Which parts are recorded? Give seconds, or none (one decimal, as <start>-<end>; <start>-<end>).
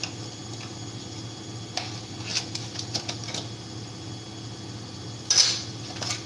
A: 0.0-6.3